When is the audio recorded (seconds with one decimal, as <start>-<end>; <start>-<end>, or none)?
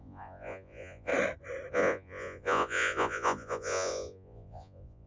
1.1-1.7